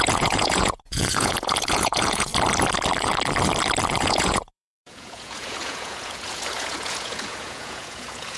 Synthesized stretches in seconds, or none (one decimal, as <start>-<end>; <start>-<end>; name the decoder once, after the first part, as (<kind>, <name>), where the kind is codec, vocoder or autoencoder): 0.0-2.3 (vocoder, Vocos); 4.0-8.4